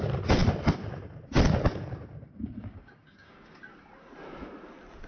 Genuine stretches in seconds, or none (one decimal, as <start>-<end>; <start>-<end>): 0.0-2.3; 3.6-5.1